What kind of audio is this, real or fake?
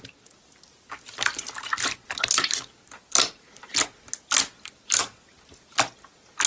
real